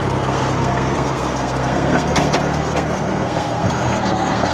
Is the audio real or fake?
fake